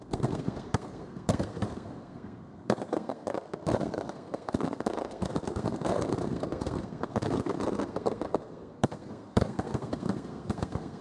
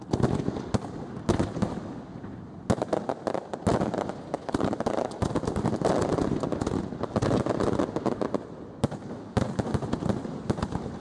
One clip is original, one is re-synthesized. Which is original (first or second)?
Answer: second